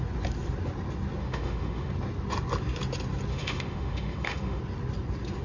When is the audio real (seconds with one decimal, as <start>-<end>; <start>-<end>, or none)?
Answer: 0.0-1.2; 1.9-3.3; 4.6-5.4